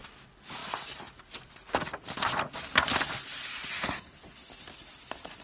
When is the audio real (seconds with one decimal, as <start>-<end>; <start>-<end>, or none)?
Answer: 0.0-0.6; 3.8-5.4